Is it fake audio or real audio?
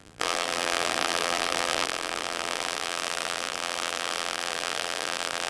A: fake